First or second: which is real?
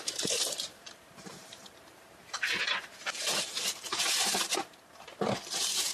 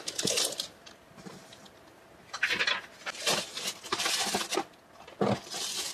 second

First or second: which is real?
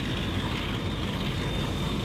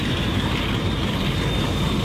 first